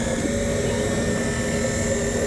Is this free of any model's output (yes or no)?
yes